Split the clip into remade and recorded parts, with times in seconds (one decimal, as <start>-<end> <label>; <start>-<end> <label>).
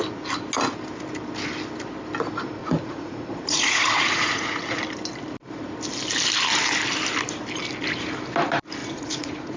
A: 0.0-2.6 recorded; 2.6-4.8 remade; 4.8-8.8 recorded; 8.8-9.6 remade